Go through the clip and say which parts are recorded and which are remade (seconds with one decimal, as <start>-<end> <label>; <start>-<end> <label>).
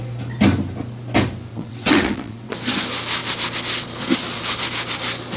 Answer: 0.0-1.5 recorded; 1.5-2.5 remade; 2.5-5.4 recorded